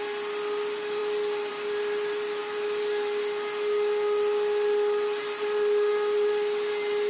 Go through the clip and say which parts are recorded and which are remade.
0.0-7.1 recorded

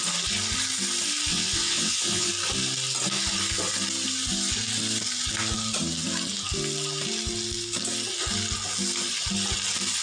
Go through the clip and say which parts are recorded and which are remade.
0.0-1.3 recorded; 1.3-2.3 remade; 2.3-10.0 recorded

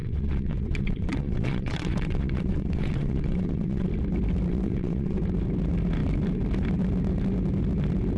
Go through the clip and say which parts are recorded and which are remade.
0.0-3.9 remade; 3.9-4.5 recorded; 4.5-5.2 remade; 5.2-8.2 recorded

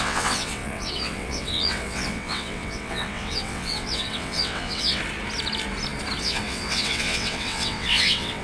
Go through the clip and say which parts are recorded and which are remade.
0.0-5.0 remade; 5.0-6.2 recorded; 6.2-8.4 remade

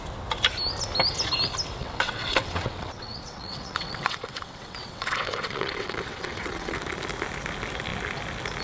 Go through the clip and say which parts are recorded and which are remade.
0.0-1.8 recorded; 1.8-6.8 remade; 6.8-8.6 recorded